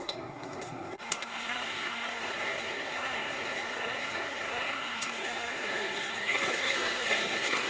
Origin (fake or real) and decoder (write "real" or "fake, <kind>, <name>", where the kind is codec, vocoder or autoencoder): fake, codec, SNAC